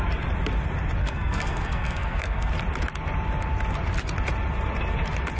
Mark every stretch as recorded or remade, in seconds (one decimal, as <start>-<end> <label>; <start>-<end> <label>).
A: 0.0-1.0 recorded; 1.0-2.5 remade; 2.5-5.4 recorded